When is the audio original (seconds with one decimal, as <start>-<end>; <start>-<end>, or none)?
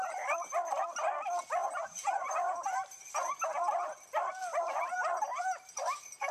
0.0-1.6; 3.8-4.4